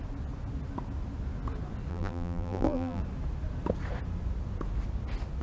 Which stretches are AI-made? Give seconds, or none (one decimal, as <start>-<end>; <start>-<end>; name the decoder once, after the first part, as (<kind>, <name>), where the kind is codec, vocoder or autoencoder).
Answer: 1.9-3.0 (vocoder, BigVGAN v2)